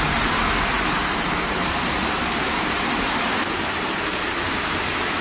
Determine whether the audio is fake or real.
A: fake